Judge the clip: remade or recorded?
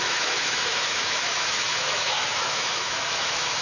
remade